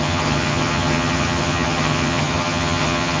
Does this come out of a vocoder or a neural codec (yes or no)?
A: yes